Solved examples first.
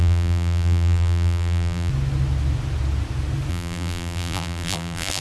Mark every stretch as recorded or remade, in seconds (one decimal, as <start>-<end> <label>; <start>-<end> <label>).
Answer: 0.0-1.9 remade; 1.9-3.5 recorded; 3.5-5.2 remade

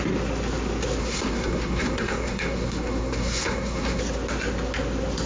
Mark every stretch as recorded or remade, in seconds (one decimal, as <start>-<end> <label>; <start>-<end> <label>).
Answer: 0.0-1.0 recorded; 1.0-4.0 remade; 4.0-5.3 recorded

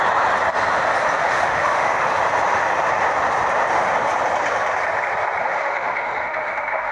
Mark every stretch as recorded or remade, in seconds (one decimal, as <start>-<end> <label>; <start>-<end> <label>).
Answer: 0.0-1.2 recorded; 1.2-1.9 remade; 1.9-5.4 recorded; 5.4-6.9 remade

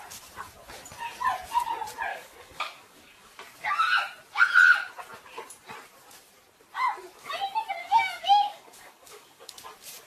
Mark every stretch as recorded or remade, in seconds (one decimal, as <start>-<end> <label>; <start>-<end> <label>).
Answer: 0.0-2.1 recorded; 2.1-3.4 remade; 3.4-7.8 recorded; 7.8-9.5 remade; 9.5-10.1 recorded